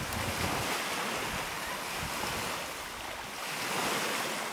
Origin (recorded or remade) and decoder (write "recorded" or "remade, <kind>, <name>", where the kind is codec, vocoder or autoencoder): recorded